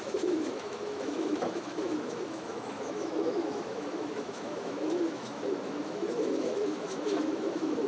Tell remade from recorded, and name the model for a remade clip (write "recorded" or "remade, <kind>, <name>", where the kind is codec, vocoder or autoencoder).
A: remade, autoencoder, DAC-VAE